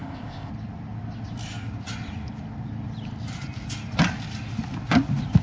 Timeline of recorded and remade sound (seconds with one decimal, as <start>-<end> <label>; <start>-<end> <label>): 0.0-0.5 remade; 0.5-5.4 recorded